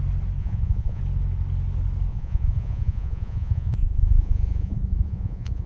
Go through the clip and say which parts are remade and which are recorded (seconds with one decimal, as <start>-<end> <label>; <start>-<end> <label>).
0.0-0.4 recorded; 0.4-1.0 remade; 1.0-2.1 recorded; 2.1-5.7 remade